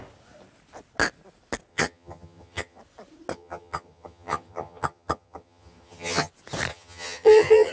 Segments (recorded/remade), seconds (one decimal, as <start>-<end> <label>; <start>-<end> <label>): 0.0-1.7 recorded; 1.7-2.8 remade; 2.8-3.3 recorded; 3.3-6.3 remade; 6.3-6.7 recorded; 6.7-7.7 remade